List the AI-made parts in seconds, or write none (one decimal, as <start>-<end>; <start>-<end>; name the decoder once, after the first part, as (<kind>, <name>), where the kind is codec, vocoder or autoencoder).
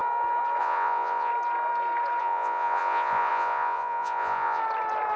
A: 0.6-1.3 (vocoder, Vocos); 2.2-4.6